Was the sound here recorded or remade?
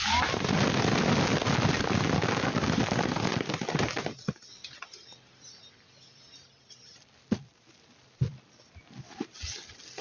recorded